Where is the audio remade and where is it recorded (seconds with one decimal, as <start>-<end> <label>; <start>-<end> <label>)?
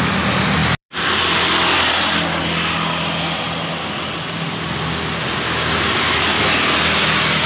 0.0-7.5 recorded